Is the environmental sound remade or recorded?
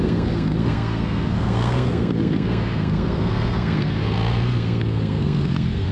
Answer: remade